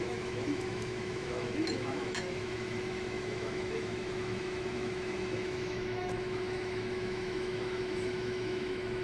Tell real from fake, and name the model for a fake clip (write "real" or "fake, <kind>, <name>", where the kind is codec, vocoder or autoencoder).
fake, autoencoder, DAC-VAE